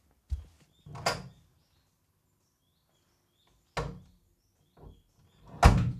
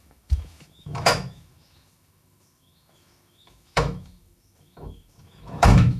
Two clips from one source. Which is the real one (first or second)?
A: first